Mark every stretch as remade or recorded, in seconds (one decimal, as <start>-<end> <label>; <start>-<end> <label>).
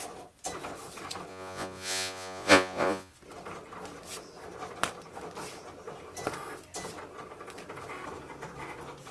0.0-1.3 recorded; 1.3-3.1 remade; 3.1-9.1 recorded